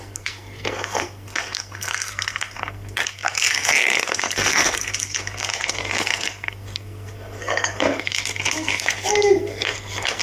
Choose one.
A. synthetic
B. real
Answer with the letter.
A